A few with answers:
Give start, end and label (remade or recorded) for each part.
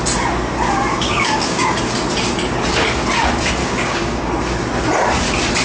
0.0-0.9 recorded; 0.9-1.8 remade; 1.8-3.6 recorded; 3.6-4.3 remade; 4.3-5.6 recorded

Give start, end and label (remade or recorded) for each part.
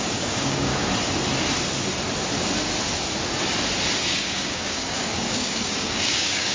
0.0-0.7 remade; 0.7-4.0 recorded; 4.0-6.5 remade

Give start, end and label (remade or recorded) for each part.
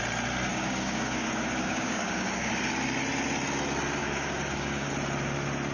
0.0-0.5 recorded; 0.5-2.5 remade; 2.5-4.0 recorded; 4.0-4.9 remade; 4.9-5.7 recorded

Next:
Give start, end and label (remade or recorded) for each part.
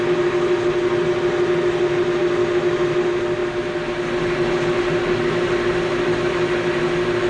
0.0-7.3 recorded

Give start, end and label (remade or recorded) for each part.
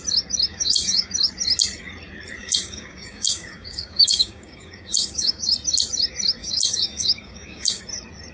0.0-0.5 recorded; 0.5-1.1 remade; 1.1-2.4 recorded; 2.4-5.5 remade; 5.5-6.4 recorded; 6.4-7.8 remade; 7.8-8.3 recorded